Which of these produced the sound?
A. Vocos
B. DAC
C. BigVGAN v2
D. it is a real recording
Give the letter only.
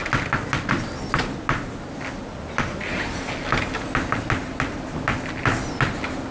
D